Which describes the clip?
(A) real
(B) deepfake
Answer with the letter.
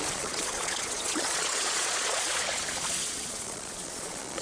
B